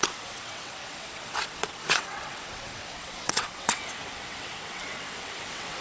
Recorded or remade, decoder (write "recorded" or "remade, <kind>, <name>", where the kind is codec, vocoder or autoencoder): remade, vocoder, WaveNeXt